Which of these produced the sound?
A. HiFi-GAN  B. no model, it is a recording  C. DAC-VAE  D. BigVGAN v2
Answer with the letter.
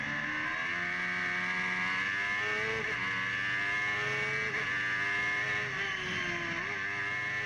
B